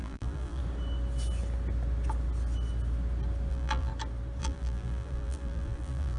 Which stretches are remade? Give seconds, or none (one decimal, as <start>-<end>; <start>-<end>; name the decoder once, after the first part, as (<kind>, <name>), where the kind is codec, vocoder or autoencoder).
0.0-0.6 (vocoder, BigVGAN v2); 3.5-3.9; 4.4-6.2

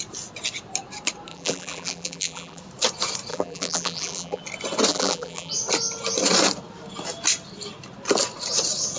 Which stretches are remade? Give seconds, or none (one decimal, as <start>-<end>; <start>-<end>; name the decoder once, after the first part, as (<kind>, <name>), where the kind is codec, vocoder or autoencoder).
1.3-2.6 (vocoder, BigVGAN v2); 3.3-4.4; 4.9-5.5

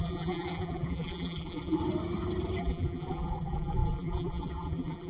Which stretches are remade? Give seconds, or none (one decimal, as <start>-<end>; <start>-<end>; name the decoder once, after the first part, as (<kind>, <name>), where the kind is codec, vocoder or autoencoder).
0.0-1.8 (vocoder, BigVGAN v2); 2.6-5.1

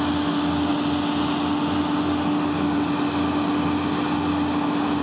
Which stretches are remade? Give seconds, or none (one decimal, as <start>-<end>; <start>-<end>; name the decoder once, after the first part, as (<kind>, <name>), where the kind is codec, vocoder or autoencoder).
none

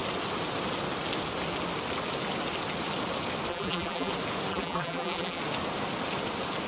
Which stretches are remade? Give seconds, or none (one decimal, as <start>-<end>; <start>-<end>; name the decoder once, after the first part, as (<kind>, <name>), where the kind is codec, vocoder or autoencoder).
3.5-4.1 (vocoder, BigVGAN v2); 4.5-5.4

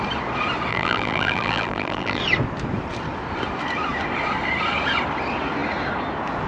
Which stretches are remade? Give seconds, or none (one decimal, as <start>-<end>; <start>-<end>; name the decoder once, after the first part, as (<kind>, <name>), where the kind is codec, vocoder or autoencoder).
0.7-2.2 (vocoder, BigVGAN v2)

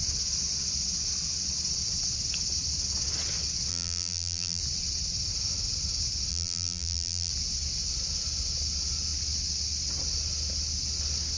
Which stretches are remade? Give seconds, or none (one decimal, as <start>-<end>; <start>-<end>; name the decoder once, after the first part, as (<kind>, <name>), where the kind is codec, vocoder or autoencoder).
3.7-4.6 (vocoder, BigVGAN v2); 6.3-7.3